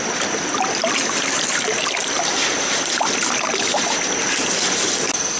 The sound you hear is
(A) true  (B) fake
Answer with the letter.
A